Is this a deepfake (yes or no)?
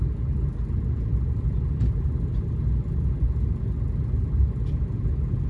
no